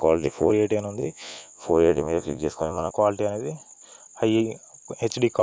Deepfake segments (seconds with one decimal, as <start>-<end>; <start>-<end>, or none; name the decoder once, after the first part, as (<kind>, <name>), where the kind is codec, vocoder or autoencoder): 0.0-0.5 (vocoder, Vocos); 1.0-2.9